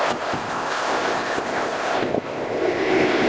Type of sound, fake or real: fake